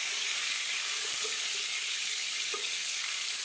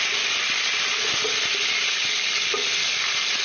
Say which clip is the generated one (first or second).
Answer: first